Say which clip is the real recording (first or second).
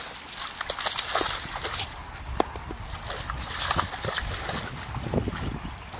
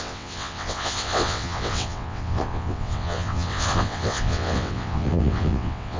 first